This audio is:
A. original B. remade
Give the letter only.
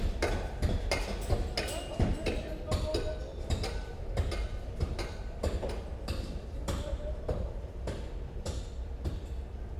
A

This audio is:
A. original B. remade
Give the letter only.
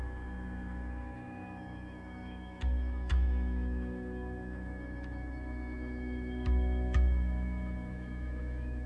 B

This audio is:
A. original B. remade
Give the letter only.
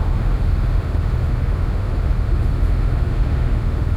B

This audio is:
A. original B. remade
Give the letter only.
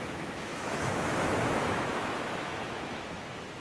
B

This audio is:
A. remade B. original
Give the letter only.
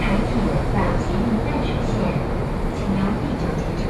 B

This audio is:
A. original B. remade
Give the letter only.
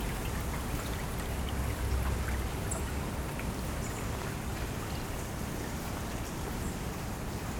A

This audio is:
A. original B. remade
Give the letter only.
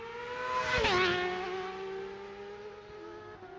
A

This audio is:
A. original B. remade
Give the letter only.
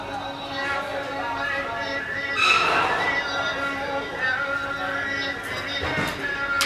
A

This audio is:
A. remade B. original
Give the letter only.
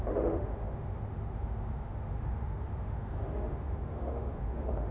A